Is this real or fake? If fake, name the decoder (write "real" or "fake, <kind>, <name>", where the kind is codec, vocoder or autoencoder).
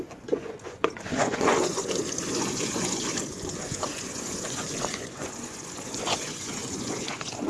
fake, vocoder, Vocos